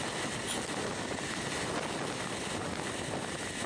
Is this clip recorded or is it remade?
recorded